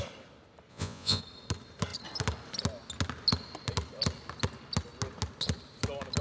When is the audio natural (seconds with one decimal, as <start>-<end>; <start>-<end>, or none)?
0.0-0.7; 1.2-6.2